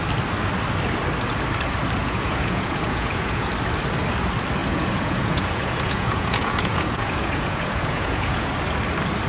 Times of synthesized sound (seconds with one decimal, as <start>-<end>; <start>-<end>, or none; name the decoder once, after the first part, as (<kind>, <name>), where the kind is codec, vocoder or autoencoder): 2.0-3.5 (vocoder, Vocos); 4.6-8.5